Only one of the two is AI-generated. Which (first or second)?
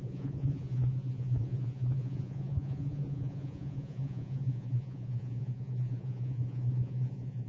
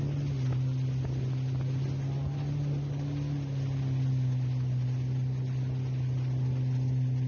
first